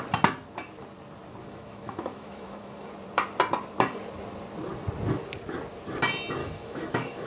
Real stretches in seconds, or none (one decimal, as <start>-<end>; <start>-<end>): 0.0-1.4; 2.9-6.4